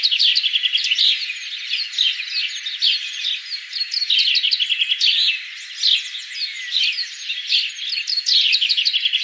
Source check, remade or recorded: recorded